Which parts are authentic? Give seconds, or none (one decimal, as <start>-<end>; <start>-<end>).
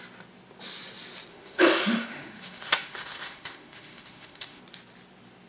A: 0.0-1.3; 4.6-5.5